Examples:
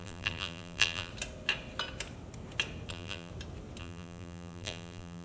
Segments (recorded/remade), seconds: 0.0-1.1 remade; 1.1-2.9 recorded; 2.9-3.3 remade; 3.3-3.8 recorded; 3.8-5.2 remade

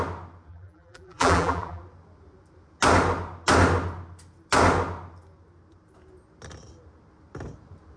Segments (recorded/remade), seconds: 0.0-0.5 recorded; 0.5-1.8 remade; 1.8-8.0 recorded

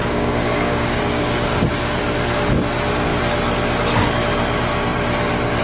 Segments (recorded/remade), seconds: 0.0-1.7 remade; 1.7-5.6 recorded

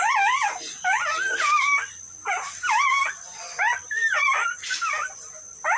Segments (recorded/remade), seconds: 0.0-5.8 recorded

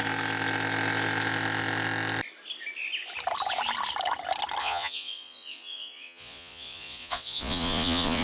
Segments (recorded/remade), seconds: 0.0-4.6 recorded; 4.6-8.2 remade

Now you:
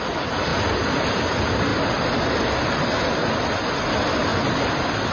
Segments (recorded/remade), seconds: 0.0-0.5 recorded; 0.5-1.1 remade; 1.1-4.3 recorded; 4.3-5.1 remade

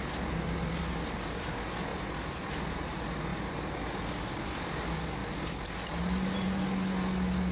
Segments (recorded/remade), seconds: 0.0-7.5 recorded

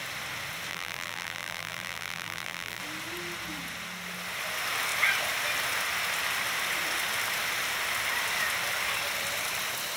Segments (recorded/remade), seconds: 0.0-0.7 recorded; 0.7-2.8 remade; 2.8-10.0 recorded